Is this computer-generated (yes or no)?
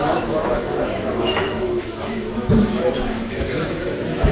yes